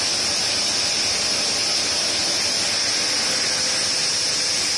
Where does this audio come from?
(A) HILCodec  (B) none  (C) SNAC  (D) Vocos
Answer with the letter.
B